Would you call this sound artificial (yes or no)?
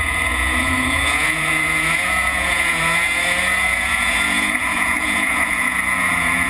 yes